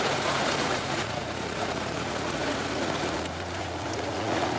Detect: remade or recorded remade